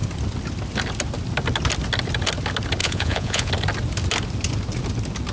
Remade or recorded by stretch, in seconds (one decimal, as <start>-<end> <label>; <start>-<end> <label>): 0.0-2.8 recorded; 2.8-3.5 remade; 3.5-5.3 recorded